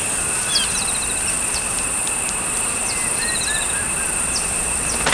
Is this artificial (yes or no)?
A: no